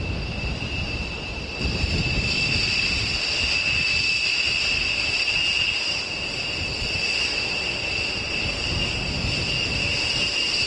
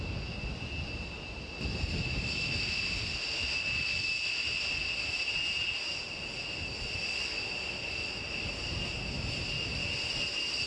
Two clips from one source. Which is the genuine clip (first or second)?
second